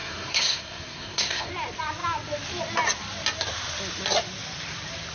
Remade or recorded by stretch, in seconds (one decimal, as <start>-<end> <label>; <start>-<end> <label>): 0.0-1.5 remade; 1.5-5.1 recorded